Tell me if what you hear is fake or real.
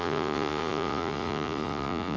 fake